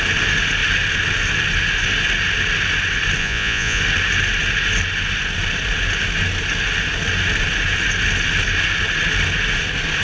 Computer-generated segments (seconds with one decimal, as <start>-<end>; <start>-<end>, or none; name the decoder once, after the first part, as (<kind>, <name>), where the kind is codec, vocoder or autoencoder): 3.2-3.8 (vocoder, Vocos)